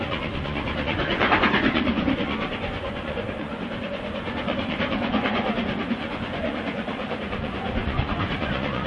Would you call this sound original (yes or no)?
no